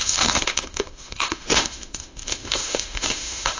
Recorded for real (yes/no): no